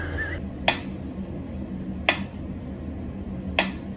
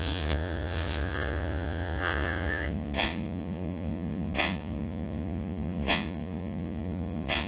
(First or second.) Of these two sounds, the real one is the first